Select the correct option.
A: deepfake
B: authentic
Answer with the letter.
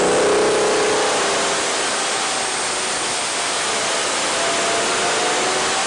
B